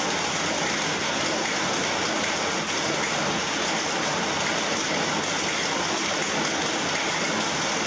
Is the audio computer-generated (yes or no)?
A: no